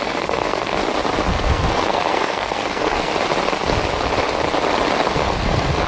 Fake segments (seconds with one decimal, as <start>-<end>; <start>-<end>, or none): 0.0-0.8; 1.3-3.1; 5.1-5.9